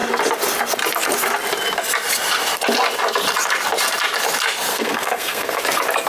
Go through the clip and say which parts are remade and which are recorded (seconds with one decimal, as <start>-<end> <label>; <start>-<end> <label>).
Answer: 0.0-4.7 recorded; 4.7-5.6 remade; 5.6-6.1 recorded